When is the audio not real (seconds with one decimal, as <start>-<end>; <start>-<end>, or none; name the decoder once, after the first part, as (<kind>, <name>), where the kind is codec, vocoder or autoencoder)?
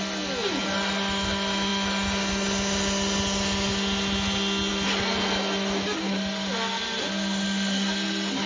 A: none